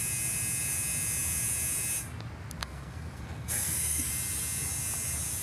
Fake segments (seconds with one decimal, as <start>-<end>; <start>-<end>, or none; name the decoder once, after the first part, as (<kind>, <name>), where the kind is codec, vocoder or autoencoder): 2.6-4.1 (codec, SNAC)